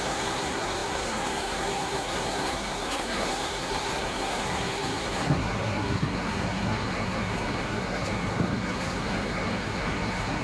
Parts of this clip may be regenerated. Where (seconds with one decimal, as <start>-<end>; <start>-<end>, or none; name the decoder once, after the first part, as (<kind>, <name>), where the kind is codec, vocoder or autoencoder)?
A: 0.0-10.4 (codec, SNAC)